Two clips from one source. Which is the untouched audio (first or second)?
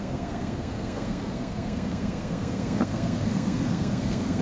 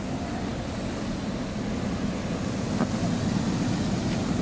second